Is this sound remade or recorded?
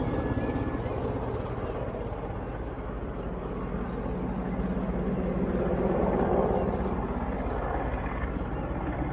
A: recorded